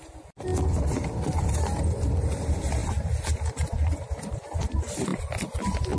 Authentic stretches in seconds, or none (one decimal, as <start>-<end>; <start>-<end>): 0.0-6.0